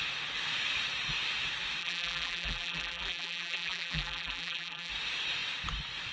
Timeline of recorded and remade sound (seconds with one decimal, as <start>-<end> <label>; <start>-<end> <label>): 0.0-1.8 recorded; 1.8-4.9 remade; 4.9-6.1 recorded